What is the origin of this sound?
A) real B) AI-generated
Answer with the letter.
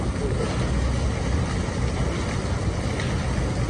A